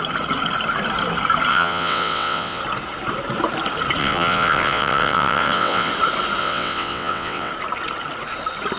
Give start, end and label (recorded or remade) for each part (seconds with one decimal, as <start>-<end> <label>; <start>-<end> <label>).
0.0-1.5 recorded; 1.5-2.6 remade; 2.6-4.0 recorded; 4.0-5.9 remade; 5.9-6.4 recorded; 6.4-7.5 remade; 7.5-8.8 recorded